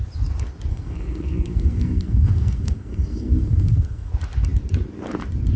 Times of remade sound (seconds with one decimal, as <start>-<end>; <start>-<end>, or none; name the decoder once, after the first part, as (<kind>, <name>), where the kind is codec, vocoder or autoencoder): 0.7-4.1 (codec, SNAC)